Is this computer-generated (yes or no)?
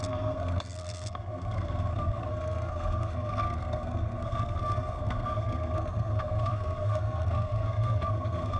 yes